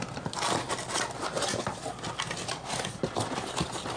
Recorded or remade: recorded